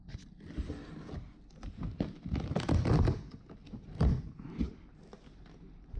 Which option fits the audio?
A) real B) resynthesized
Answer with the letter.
A